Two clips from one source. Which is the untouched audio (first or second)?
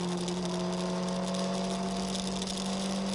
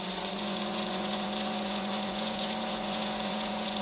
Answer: first